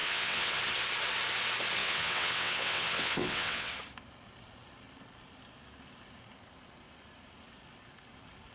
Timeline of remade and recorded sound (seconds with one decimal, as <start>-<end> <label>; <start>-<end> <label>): 0.0-0.6 remade; 0.6-1.8 recorded; 1.8-3.7 remade; 3.7-8.5 recorded